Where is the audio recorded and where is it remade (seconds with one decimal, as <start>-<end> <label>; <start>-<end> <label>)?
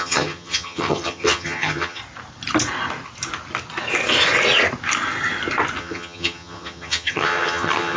0.0-2.0 remade; 2.0-5.8 recorded; 5.8-8.0 remade